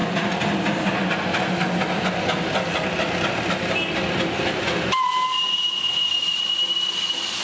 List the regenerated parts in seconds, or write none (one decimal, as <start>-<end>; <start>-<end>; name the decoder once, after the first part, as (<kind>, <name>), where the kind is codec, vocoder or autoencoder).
0.0-0.6 (vocoder, BigVGAN v2)